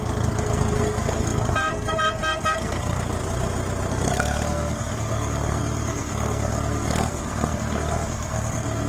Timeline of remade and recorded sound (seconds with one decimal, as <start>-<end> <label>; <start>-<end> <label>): 0.0-3.2 remade; 3.2-3.9 recorded; 3.9-8.9 remade